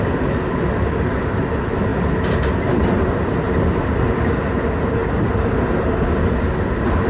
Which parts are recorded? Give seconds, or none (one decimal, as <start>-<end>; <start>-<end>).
0.0-7.1